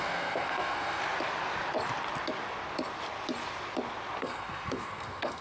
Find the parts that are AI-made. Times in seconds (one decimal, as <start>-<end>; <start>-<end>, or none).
0.0-1.0; 4.2-5.4